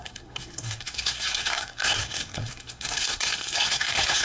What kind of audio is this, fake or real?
fake